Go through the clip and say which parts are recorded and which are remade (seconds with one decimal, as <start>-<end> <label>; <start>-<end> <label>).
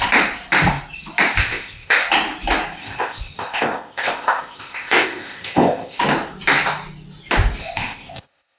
0.0-1.4 recorded; 1.4-2.1 remade; 2.1-2.8 recorded; 2.8-6.0 remade; 6.0-7.6 recorded; 7.6-8.6 remade